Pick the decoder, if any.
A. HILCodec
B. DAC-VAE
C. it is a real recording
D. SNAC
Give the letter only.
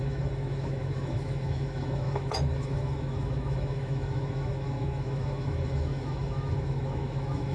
B